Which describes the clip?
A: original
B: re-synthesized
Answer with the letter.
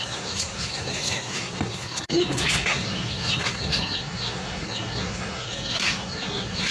B